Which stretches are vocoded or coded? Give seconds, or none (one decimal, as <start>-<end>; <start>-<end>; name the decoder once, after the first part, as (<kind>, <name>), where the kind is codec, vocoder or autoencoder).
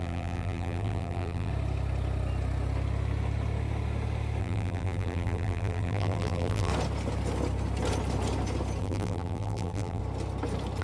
0.0-1.5 (vocoder, BigVGAN v2); 4.4-6.7; 8.8-10.0